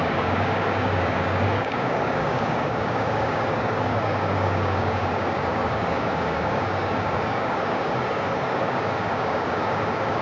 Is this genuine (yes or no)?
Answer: no